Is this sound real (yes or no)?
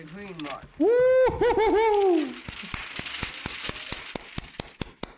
yes